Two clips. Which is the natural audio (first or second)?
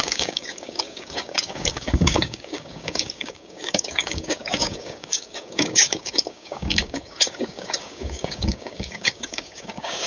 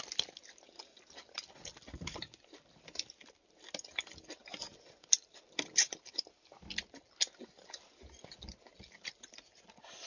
second